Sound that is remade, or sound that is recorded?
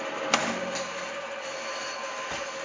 recorded